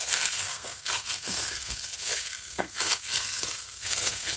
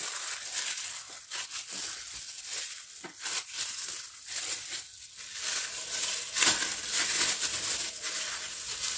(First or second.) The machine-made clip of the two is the first